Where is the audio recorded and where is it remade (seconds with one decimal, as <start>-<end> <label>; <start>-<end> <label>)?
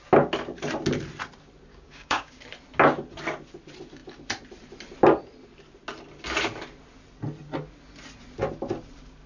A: 0.0-1.7 recorded; 1.7-2.4 remade; 2.4-9.3 recorded